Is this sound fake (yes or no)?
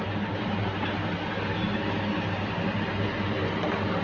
no